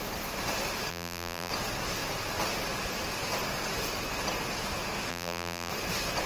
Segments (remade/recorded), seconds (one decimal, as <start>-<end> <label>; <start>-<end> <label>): 0.0-0.9 recorded; 0.9-1.5 remade; 1.5-5.1 recorded; 5.1-5.7 remade; 5.7-6.3 recorded